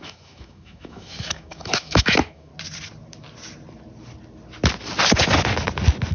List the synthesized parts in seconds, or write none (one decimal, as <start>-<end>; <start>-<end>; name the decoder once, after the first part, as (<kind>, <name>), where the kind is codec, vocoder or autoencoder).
0.0-2.5 (autoencoder, DAC-VAE)

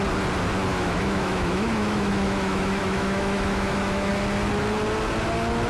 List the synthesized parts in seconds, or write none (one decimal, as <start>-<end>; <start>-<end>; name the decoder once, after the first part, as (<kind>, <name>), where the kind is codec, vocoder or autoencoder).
0.7-4.1 (autoencoder, DAC-VAE)

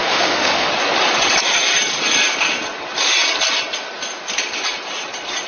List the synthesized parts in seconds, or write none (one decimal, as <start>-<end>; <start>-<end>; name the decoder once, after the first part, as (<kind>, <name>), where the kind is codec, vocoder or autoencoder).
0.0-0.7 (autoencoder, DAC-VAE)